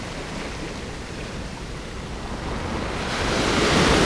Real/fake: real